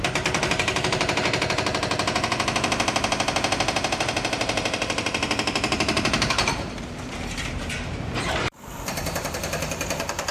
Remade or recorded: remade